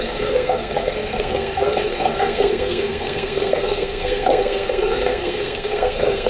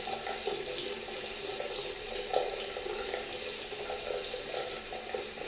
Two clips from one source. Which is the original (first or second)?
second